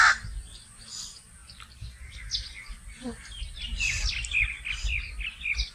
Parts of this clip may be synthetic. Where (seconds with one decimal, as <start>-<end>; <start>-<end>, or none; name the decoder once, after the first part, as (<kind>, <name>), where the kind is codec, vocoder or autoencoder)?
1.4-2.1 (vocoder, BigVGAN v2)